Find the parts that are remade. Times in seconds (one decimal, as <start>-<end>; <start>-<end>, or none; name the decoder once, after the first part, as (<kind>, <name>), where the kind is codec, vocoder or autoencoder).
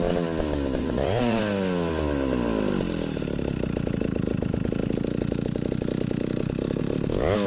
0.8-1.4 (vocoder, Vocos)